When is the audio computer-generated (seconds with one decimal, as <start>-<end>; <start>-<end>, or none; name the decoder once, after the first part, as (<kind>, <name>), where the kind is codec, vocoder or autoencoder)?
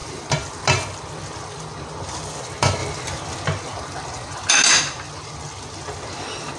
none